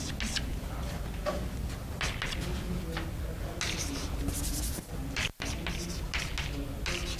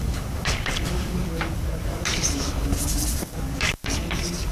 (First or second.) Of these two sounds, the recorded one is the first